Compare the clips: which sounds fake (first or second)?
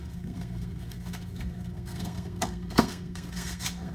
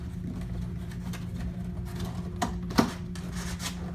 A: first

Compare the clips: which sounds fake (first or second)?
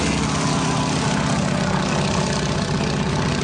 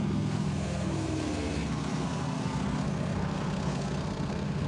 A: second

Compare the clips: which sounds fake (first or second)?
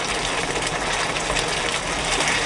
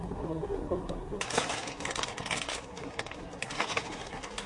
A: second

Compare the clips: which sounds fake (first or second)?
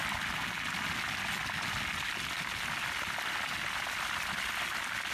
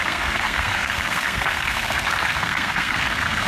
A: second